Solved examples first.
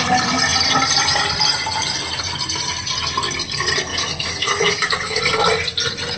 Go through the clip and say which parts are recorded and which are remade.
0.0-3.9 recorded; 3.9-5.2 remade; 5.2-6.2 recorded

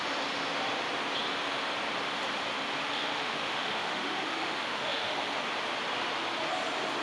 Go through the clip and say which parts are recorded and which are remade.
0.0-2.8 recorded; 2.8-5.5 remade; 5.5-7.0 recorded

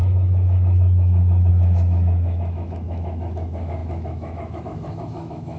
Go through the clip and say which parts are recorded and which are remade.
0.0-5.6 remade

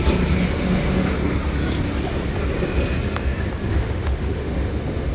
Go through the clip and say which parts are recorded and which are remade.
0.0-0.4 recorded; 0.4-1.1 remade; 1.1-3.7 recorded; 3.7-5.1 remade

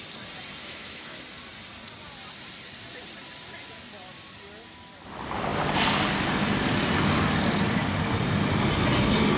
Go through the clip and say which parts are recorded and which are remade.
0.0-0.6 recorded; 0.6-1.2 remade; 1.2-9.4 recorded